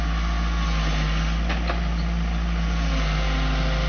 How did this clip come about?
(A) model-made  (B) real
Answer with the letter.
B